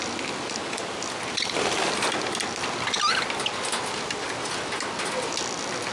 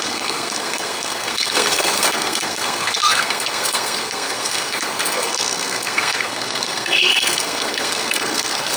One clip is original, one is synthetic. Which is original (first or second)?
first